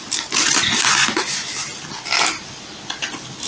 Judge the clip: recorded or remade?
recorded